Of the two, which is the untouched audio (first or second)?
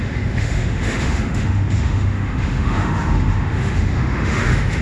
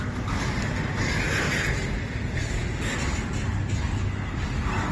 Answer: second